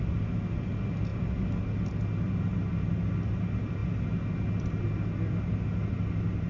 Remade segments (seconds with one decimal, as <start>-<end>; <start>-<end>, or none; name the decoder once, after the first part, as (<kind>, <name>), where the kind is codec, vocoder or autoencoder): none